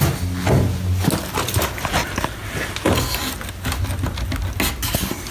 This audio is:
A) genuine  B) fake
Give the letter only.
A